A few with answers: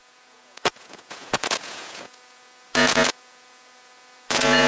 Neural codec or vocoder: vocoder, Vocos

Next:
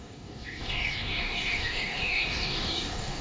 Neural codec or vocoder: codec, DAC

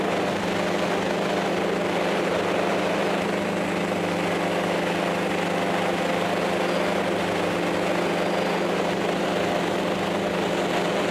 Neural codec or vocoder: none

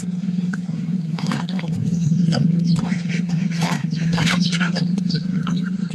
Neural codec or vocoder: codec, SNAC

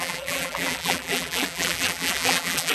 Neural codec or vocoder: vocoder, BigVGAN v2